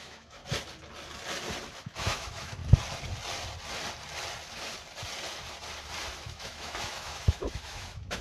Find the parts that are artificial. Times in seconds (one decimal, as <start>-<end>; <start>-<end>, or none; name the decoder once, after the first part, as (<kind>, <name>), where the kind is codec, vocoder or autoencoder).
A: 0.0-0.4 (autoencoder, DAC-VAE); 1.8-2.6; 6.2-8.2

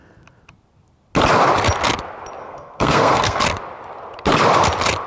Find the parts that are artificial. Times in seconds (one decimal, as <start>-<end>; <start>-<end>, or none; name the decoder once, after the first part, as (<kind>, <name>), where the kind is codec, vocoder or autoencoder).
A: 2.4-3.4 (codec, SNAC)

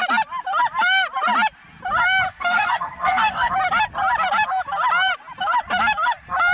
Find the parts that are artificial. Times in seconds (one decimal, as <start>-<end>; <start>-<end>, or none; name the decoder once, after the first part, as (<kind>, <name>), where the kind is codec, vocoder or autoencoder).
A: 2.3-3.5 (codec, SNAC)

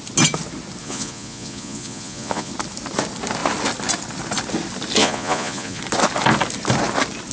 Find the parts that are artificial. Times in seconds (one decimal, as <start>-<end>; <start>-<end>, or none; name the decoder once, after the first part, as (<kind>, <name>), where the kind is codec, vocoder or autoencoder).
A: 0.8-2.5 (vocoder, Vocos); 5.0-5.8

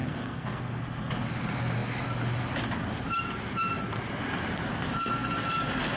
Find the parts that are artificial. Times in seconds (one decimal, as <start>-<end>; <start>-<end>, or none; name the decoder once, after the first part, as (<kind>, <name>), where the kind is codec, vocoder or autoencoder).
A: 0.0-0.8 (codec, SNAC)